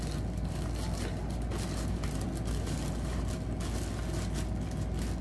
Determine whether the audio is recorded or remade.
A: recorded